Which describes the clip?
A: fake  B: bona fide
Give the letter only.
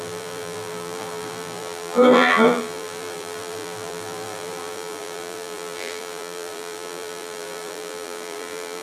A